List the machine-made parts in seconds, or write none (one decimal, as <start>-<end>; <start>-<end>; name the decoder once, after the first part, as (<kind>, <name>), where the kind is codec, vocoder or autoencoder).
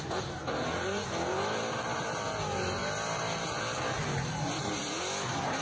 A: none